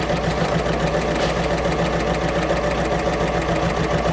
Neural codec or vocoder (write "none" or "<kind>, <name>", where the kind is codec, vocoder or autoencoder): none